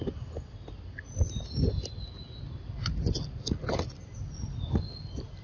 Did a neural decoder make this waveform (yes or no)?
no